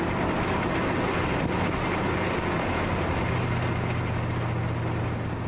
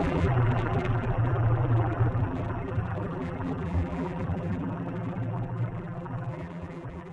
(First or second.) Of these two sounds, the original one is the first